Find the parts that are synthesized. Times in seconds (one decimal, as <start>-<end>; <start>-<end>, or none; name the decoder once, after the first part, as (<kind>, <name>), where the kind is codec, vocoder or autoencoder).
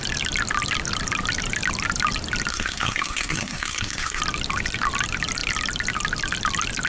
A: 2.5-4.2 (codec, SNAC)